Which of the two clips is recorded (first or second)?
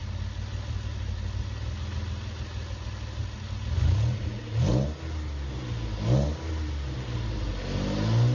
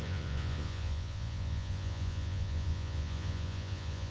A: first